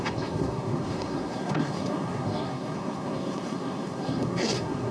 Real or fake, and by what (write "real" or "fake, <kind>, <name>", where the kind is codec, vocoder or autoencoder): fake, codec, SNAC